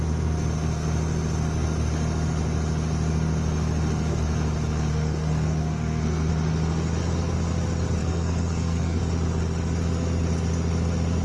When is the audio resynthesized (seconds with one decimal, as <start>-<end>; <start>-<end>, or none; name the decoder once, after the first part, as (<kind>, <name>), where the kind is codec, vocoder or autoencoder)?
4.9-6.3 (codec, SNAC); 8.0-9.0